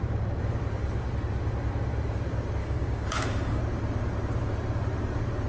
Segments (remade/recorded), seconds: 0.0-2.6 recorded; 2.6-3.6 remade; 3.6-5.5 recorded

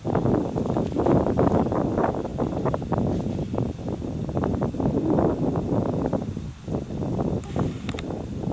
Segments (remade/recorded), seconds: 0.0-8.5 recorded

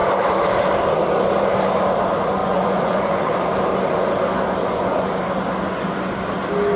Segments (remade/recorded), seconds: 0.0-2.4 recorded; 2.4-3.4 remade; 3.4-4.6 recorded; 4.6-5.1 remade; 5.1-6.8 recorded

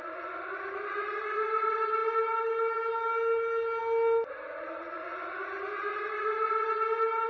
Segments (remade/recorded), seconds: 0.0-7.3 recorded

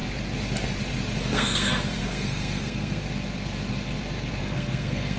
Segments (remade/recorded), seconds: 0.0-1.2 recorded; 1.2-3.0 remade; 3.0-4.4 recorded; 4.4-5.2 remade

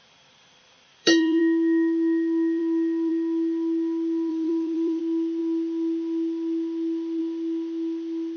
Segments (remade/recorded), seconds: 0.0-1.4 remade; 1.4-4.3 recorded; 4.3-5.0 remade; 5.0-8.4 recorded

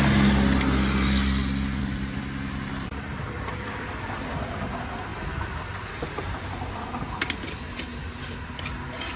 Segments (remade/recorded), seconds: 0.0-1.8 recorded; 1.8-4.3 remade; 4.3-5.1 recorded; 5.1-6.7 remade; 6.7-9.2 recorded

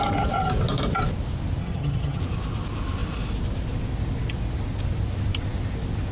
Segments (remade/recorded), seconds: 0.0-1.6 recorded; 1.6-2.2 remade; 2.2-6.1 recorded